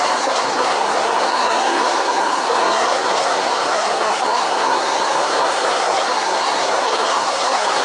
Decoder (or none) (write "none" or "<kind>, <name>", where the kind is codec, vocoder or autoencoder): codec, SNAC